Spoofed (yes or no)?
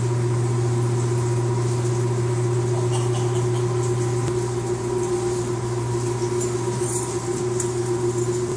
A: no